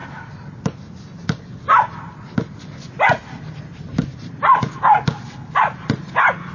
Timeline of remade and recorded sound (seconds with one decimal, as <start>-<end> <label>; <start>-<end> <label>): 0.0-4.1 recorded; 4.1-4.8 remade; 4.8-6.5 recorded